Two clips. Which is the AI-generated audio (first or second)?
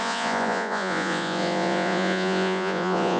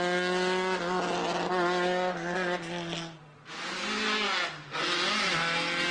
first